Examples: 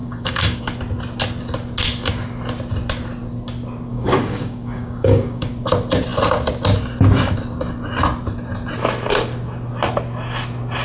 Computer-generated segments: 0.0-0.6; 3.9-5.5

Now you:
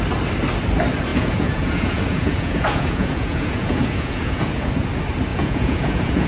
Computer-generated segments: 1.1-4.7; 5.3-6.3

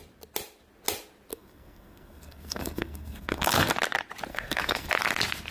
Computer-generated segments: 1.3-3.7; 4.3-4.9

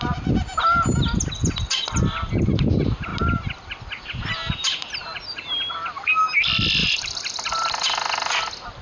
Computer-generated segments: 5.0-5.6; 6.8-7.7

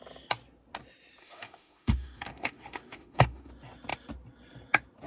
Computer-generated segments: 1.2-3.5